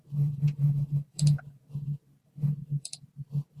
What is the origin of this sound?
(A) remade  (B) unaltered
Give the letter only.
A